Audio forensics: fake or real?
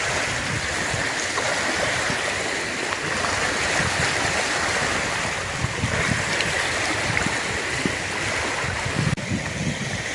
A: real